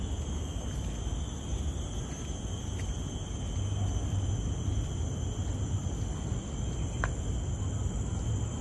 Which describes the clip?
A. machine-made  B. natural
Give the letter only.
B